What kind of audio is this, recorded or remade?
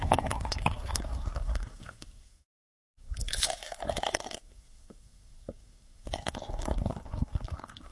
remade